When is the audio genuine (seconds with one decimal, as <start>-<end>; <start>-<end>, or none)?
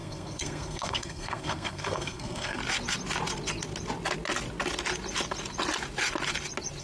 2.6-6.8